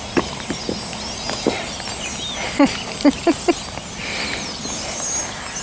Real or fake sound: real